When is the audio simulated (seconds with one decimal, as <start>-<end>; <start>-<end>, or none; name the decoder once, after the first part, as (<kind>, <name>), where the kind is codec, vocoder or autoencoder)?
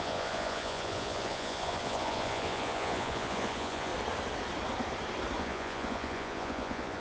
0.0-3.9 (vocoder, Vocos); 5.4-7.0